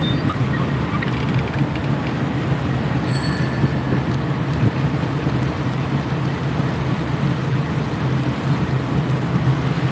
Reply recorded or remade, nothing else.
recorded